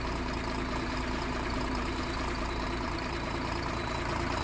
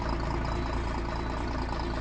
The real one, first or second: second